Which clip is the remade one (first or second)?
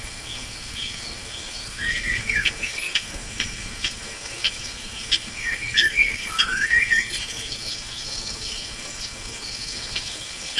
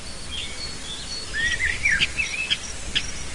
first